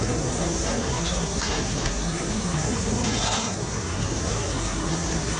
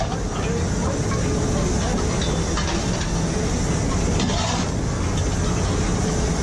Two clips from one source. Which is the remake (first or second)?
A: first